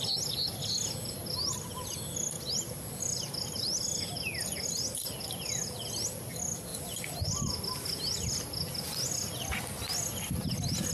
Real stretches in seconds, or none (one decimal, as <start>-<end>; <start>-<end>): 0.0-10.9